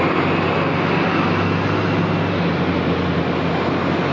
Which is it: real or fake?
real